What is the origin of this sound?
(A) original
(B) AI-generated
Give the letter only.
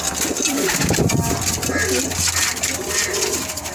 A